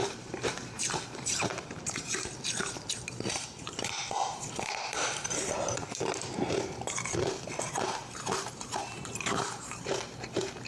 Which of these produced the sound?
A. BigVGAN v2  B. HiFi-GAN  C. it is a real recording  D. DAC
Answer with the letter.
A